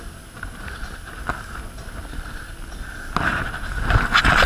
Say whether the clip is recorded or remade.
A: recorded